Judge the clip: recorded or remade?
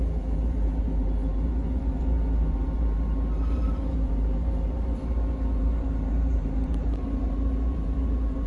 remade